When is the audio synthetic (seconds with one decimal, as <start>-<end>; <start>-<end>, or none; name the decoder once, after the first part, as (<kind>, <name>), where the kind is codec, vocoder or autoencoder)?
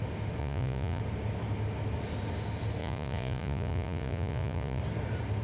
0.4-1.0 (vocoder, Vocos); 2.8-4.8